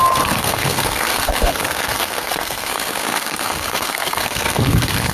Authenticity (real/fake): fake